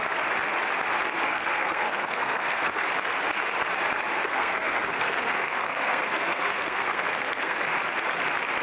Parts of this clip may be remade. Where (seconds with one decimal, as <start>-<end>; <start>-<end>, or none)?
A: 1.3-2.8; 4.2-7.6